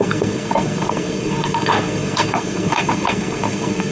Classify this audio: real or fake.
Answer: fake